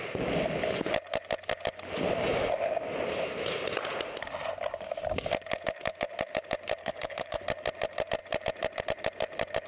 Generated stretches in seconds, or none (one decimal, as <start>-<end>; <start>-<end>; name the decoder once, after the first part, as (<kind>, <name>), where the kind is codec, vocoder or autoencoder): 6.8-7.4 (codec, HILCodec)